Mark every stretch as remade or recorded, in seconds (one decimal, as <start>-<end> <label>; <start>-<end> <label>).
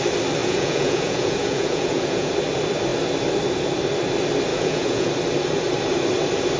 0.0-0.4 recorded; 0.4-2.3 remade; 2.3-4.5 recorded; 4.5-5.1 remade; 5.1-6.6 recorded